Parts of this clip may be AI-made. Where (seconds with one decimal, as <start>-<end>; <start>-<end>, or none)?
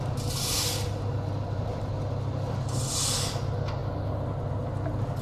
none